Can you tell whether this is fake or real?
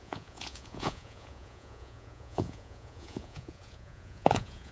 fake